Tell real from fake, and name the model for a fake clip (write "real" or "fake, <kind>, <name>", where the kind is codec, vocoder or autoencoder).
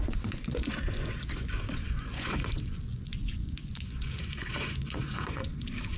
fake, vocoder, Vocos